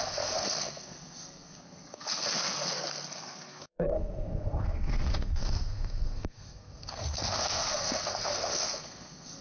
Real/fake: fake